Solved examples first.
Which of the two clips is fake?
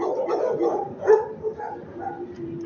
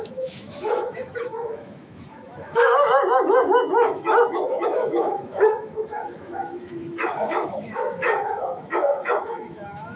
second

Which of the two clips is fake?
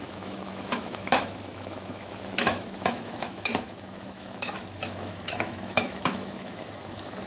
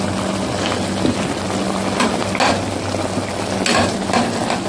first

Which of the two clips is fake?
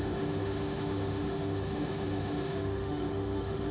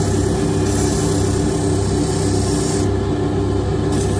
first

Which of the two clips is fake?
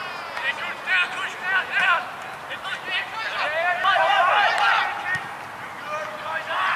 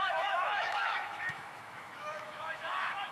second